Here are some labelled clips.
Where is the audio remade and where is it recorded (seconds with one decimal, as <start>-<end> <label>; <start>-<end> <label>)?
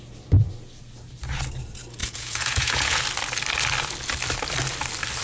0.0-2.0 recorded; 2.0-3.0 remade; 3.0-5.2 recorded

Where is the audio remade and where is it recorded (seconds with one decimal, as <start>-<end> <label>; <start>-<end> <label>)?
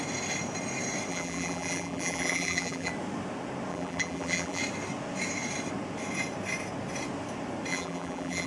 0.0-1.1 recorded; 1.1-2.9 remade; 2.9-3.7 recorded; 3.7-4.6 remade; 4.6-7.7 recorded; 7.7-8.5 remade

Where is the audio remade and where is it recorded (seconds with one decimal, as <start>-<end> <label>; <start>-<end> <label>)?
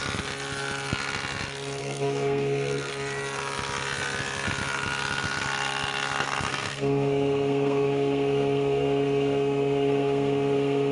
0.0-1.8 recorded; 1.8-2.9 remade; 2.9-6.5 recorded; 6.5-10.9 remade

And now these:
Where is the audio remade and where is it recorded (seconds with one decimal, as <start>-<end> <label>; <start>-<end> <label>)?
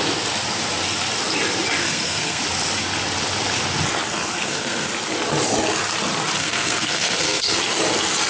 0.0-1.8 recorded; 1.8-2.4 remade; 2.4-4.4 recorded; 4.4-4.9 remade; 4.9-6.4 recorded; 6.4-7.6 remade; 7.6-8.3 recorded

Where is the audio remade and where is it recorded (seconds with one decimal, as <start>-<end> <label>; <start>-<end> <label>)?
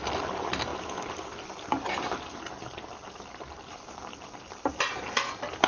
0.0-5.7 recorded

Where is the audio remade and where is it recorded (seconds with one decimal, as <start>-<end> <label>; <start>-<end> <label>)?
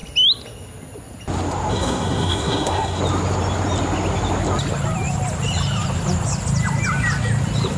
0.0-1.7 recorded; 1.7-3.0 remade; 3.0-7.8 recorded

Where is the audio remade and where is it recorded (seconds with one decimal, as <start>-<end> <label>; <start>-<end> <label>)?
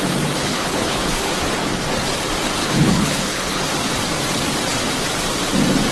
0.0-0.5 recorded; 0.5-1.3 remade; 1.3-2.6 recorded; 2.6-3.6 remade; 3.6-5.9 recorded